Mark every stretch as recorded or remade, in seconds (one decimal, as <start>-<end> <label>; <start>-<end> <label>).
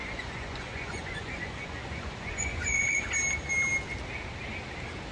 0.0-3.1 remade; 3.1-5.1 recorded